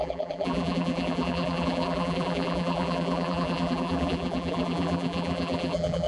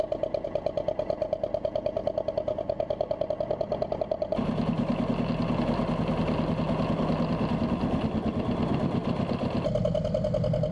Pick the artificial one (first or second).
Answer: first